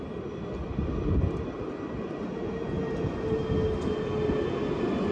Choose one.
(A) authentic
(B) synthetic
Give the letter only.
A